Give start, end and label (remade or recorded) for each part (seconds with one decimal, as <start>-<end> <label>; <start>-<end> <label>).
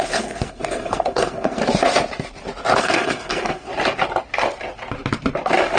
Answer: 0.0-1.6 remade; 1.6-2.8 recorded; 2.8-3.7 remade; 3.7-5.8 recorded